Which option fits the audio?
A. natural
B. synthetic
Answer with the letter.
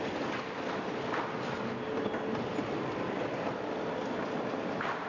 A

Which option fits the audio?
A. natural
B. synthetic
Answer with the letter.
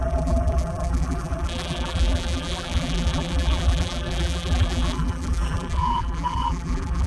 B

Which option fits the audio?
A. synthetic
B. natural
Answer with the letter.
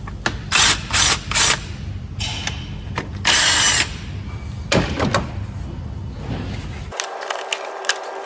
B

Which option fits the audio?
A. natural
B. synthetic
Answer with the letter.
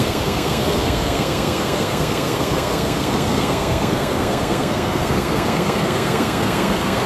B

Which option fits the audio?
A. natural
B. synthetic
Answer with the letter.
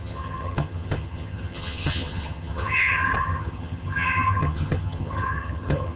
B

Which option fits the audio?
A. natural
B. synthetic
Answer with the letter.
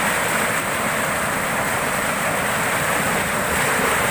A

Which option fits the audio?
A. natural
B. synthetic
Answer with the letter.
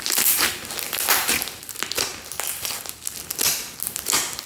A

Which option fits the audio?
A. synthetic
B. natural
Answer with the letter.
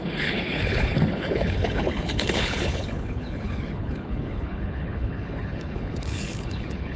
A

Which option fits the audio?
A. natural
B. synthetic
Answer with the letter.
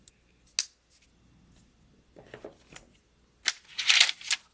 A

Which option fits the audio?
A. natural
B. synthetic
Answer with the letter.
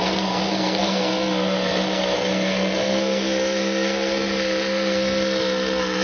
B